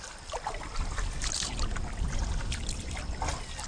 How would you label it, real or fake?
real